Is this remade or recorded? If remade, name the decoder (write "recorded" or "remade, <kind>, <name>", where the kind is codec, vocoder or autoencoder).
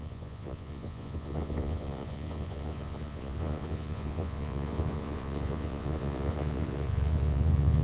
remade, vocoder, Vocos